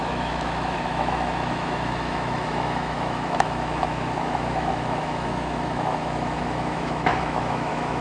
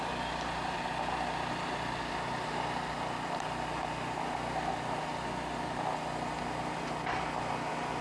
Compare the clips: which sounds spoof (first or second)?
first